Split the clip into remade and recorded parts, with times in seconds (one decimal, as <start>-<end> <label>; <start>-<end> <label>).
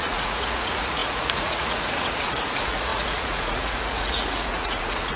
0.0-5.2 remade